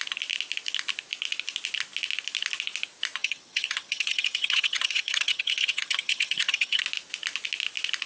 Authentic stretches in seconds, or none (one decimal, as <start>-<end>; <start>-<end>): 0.0-3.2; 6.8-8.1